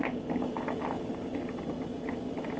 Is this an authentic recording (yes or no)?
yes